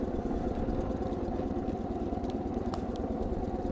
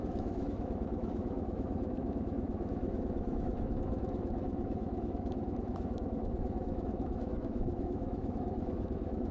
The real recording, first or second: first